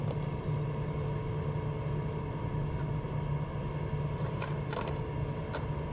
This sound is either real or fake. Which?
real